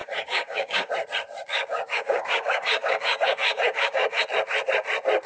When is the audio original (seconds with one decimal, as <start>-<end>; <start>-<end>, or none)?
0.9-1.5; 4.2-5.3